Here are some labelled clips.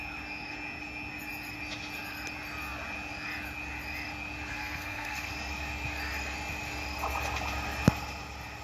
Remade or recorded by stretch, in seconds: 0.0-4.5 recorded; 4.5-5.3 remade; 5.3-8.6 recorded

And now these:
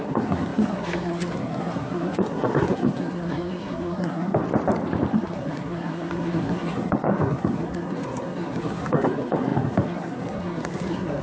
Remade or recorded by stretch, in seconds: 0.0-4.4 remade; 4.4-5.1 recorded; 5.1-11.2 remade

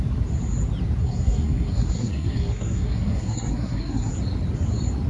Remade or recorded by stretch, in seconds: 0.0-1.0 recorded; 1.0-4.1 remade; 4.1-5.1 recorded

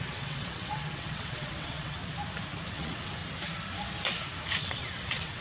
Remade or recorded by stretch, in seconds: 0.0-2.0 remade; 2.0-2.7 recorded; 2.7-3.2 remade; 3.2-4.6 recorded; 4.6-5.4 remade

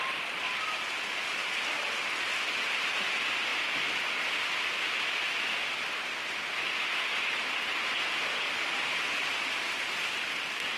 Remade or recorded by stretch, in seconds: 0.0-10.8 recorded